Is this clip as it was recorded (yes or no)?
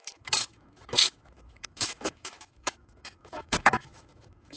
no